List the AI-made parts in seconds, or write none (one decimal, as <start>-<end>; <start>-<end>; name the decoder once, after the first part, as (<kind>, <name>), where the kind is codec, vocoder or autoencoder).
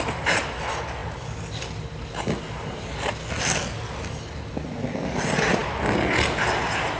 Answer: none